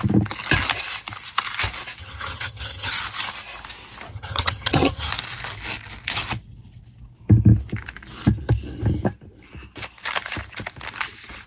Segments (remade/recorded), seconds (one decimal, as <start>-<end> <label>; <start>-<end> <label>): 0.0-2.0 recorded; 2.0-2.9 remade; 2.9-4.1 recorded; 4.1-5.1 remade; 5.1-11.5 recorded